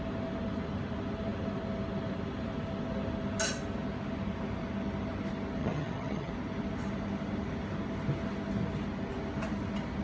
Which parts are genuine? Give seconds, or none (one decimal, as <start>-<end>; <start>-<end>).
0.0-5.6; 6.3-10.0